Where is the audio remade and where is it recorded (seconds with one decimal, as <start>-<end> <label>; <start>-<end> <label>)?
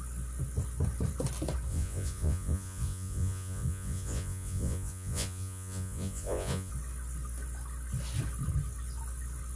0.0-1.7 recorded; 1.7-6.7 remade; 6.7-9.6 recorded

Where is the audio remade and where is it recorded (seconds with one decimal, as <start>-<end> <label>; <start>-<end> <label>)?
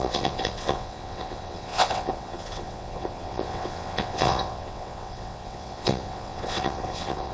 0.0-7.3 remade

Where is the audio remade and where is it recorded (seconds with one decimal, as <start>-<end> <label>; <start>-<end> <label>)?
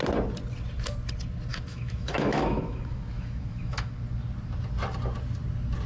0.0-1.5 recorded; 1.5-3.9 remade; 3.9-5.9 recorded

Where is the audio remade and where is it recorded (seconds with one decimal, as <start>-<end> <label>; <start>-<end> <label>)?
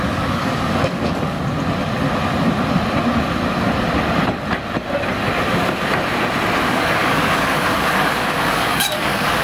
0.0-1.4 remade; 1.4-6.6 recorded; 6.6-9.4 remade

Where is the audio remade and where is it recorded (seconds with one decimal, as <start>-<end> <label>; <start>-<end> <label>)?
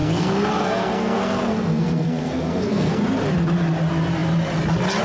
0.0-3.0 remade; 3.0-5.0 recorded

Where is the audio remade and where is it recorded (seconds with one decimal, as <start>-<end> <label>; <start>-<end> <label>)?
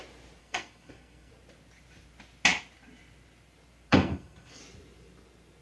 0.0-0.4 recorded; 0.4-1.3 remade; 1.3-3.9 recorded; 3.9-4.6 remade; 4.6-5.6 recorded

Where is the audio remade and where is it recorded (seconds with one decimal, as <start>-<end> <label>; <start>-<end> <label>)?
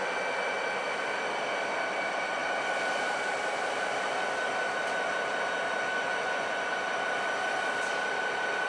0.0-5.9 recorded; 5.9-6.7 remade; 6.7-8.7 recorded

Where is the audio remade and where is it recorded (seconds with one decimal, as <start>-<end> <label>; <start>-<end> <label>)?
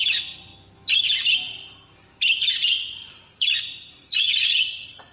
0.0-0.5 remade; 0.5-2.5 recorded; 2.5-5.1 remade